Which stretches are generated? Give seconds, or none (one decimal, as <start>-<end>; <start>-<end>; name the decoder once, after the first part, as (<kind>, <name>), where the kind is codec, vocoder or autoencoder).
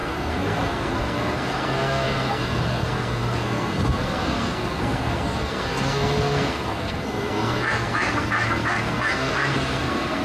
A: 0.0-10.2 (codec, SNAC)